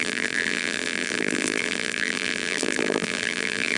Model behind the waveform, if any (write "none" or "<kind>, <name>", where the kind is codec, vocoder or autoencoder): vocoder, BigVGAN v2